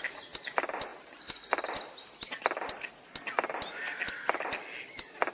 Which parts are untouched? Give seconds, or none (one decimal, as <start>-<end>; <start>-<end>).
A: 0.0-5.3